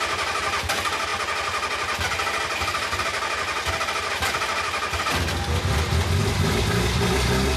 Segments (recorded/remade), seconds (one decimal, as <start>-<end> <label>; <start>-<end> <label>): 0.0-7.6 recorded

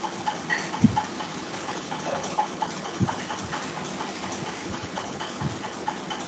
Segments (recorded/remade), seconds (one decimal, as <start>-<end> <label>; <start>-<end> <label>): 0.0-1.3 recorded; 1.3-3.2 remade; 3.2-4.6 recorded; 4.6-5.4 remade; 5.4-6.3 recorded

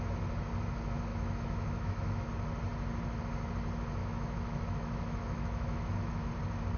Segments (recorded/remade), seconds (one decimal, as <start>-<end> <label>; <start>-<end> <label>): 0.0-1.1 recorded; 1.1-2.3 remade; 2.3-4.0 recorded; 4.0-6.3 remade; 6.3-6.8 recorded